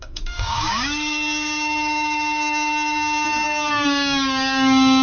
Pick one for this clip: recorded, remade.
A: remade